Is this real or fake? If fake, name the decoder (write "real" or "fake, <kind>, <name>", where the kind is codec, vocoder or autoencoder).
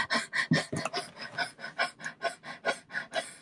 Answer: real